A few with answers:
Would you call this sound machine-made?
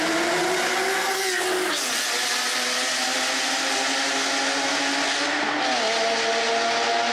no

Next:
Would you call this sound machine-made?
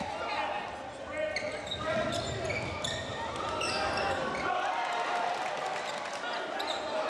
no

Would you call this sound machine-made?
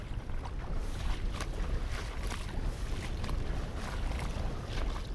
no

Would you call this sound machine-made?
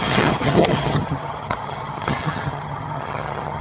yes